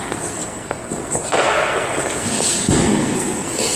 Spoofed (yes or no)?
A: yes